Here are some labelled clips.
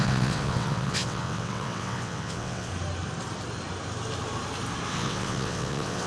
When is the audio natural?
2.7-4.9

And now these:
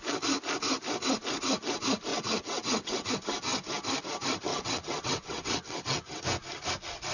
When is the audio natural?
0.0-2.1; 3.1-4.5; 6.2-7.1

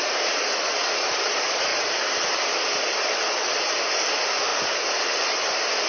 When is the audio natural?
0.0-5.9

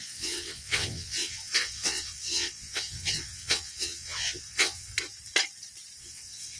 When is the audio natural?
4.9-6.0

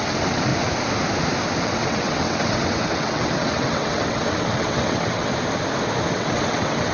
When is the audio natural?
0.5-1.6; 5.3-6.1